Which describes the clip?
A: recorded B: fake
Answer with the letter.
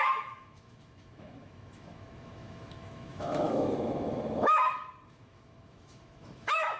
B